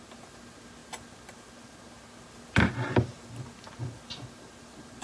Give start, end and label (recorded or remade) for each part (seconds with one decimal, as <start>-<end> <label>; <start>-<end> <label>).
0.0-5.0 recorded